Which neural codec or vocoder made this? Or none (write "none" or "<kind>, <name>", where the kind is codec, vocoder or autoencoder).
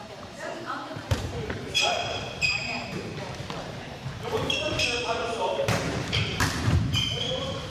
vocoder, BigVGAN v2